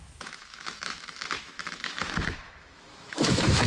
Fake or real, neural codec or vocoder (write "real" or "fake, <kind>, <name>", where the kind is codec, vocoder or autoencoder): fake, autoencoder, DAC-VAE